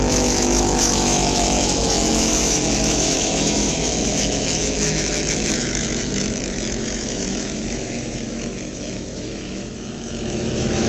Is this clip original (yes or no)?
no